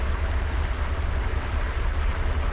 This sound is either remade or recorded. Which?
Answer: remade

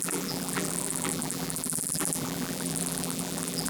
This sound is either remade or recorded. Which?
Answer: remade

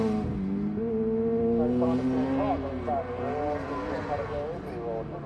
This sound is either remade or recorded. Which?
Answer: recorded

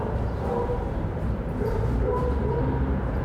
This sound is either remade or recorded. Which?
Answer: remade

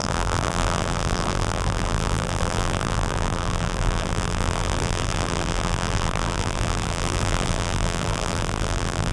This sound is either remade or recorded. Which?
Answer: remade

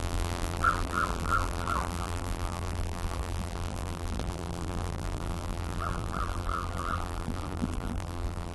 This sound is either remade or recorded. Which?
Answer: remade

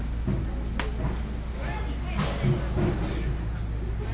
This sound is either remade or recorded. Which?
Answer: recorded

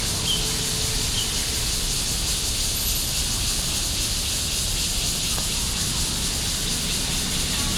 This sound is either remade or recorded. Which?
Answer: recorded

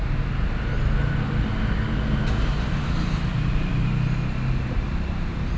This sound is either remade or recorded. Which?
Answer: recorded